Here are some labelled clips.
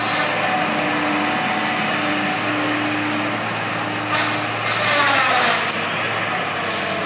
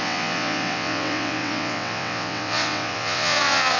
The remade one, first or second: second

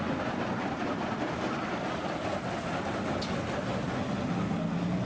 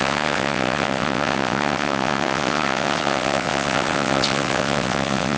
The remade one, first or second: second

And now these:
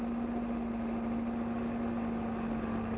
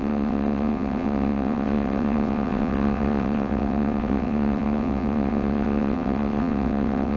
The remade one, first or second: second